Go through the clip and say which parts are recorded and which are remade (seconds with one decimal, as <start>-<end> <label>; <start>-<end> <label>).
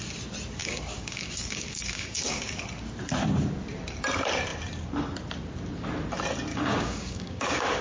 0.0-0.6 recorded; 0.6-2.5 remade; 2.5-6.5 recorded; 6.5-7.8 remade